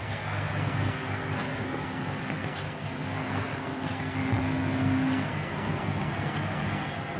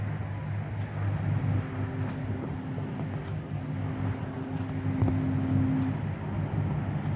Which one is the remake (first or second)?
first